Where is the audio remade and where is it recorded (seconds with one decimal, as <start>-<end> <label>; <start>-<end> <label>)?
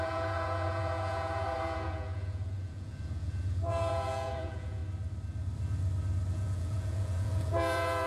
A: 0.0-4.8 remade; 4.8-6.3 recorded; 6.3-8.1 remade